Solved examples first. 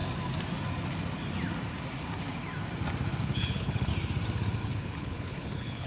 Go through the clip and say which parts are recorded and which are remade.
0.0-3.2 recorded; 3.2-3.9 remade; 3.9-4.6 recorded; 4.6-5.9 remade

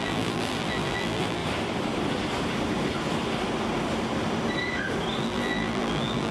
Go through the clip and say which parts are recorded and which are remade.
0.0-1.4 remade; 1.4-5.2 recorded; 5.2-6.3 remade

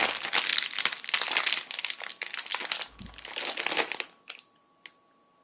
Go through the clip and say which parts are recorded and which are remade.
0.0-5.4 recorded

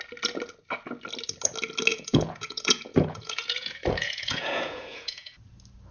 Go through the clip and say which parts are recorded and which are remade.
0.0-1.9 recorded; 1.9-5.4 remade; 5.4-5.9 recorded

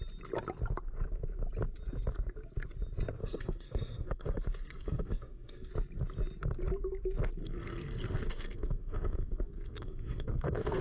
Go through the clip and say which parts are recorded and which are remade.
0.0-3.2 recorded; 3.2-5.7 remade; 5.7-7.4 recorded; 7.4-10.8 remade

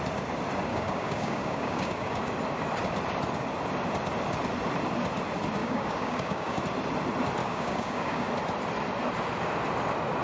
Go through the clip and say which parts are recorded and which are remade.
0.0-0.7 recorded; 0.7-2.3 remade; 2.3-5.6 recorded; 5.6-6.6 remade; 6.6-7.4 recorded; 7.4-8.3 remade; 8.3-10.2 recorded